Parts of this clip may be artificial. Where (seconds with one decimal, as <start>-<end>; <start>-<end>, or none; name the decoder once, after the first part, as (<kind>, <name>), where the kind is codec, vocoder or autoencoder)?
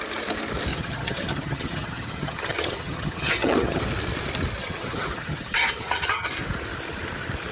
0.7-3.8 (vocoder, HiFi-GAN); 4.6-6.3